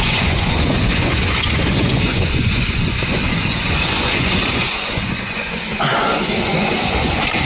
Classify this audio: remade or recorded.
remade